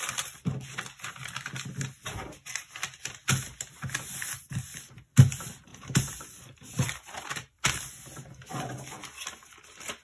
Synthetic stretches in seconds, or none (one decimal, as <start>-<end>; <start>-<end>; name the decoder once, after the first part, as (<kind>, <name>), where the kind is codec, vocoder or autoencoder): 5.7-7.8 (vocoder, BigVGAN v2)